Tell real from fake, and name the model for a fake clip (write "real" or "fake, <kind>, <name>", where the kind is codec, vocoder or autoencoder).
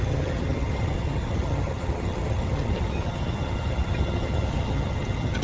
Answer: fake, vocoder, HiFi-GAN